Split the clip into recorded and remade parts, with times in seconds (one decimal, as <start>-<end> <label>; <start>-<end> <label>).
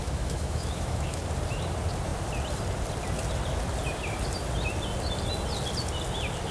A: 0.0-1.2 remade; 1.2-6.5 recorded